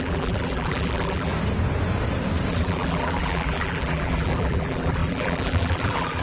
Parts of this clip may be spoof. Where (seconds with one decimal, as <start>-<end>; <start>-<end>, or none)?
0.0-1.3; 2.5-6.2